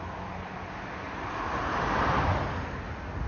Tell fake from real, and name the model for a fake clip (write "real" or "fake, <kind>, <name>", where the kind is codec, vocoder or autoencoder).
real